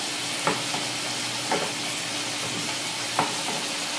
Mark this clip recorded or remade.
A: recorded